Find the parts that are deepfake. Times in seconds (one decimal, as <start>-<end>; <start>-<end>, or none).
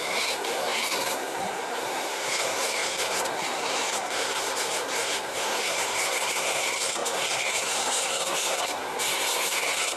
0.0-10.0